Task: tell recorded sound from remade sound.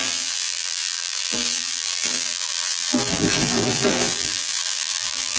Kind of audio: remade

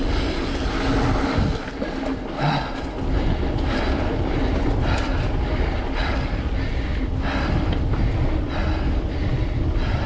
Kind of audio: recorded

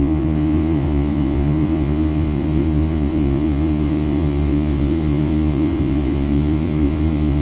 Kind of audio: remade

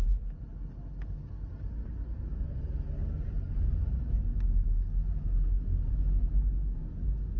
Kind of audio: recorded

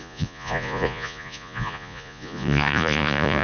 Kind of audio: remade